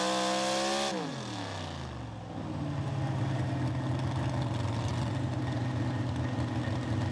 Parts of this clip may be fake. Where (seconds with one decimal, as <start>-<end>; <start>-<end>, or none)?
none